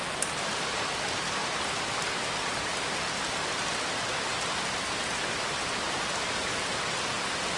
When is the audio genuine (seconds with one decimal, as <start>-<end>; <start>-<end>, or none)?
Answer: 0.0-7.6